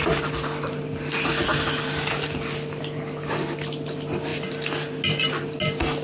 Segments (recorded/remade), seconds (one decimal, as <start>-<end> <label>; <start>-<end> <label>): 0.0-6.0 recorded